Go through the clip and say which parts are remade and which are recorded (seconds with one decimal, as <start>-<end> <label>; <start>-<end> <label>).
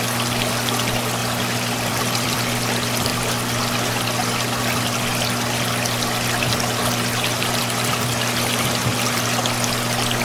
0.0-1.2 recorded; 1.2-2.4 remade; 2.4-10.2 recorded